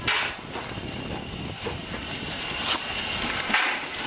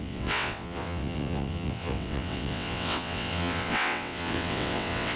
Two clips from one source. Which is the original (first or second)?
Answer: first